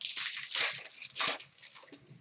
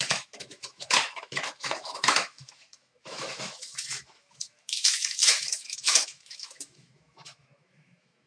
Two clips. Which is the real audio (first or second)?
first